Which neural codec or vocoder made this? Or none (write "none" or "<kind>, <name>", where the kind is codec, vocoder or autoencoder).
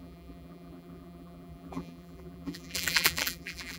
vocoder, BigVGAN v2